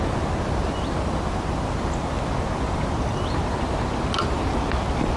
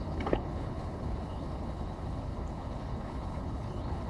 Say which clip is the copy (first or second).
second